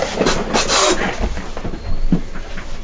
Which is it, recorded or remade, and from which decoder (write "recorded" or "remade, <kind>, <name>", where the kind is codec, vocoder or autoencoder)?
recorded